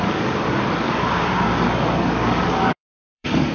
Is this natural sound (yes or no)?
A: no